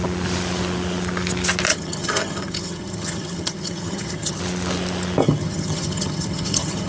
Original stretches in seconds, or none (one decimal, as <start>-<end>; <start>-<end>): 0.0-1.7; 4.4-5.2